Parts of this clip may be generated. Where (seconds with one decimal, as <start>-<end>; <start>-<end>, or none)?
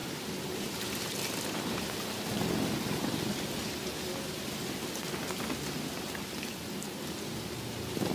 none